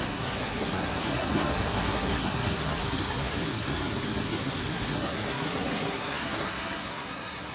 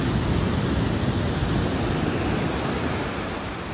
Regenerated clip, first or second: first